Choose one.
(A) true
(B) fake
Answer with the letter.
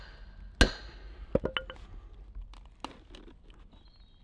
A